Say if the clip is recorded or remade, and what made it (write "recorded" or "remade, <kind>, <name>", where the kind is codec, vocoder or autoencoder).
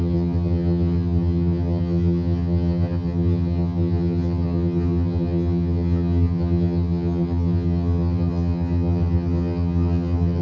remade, vocoder, HiFi-GAN